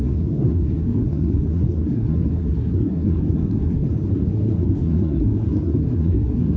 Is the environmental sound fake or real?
fake